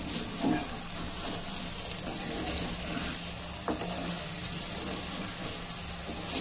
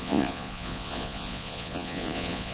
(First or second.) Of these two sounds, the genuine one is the first